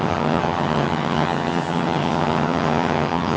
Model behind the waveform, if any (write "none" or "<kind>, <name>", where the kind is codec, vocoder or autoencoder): vocoder, HiFi-GAN